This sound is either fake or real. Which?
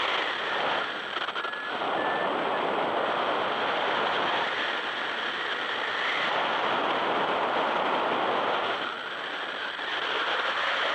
real